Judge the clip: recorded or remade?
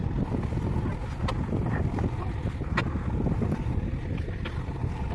recorded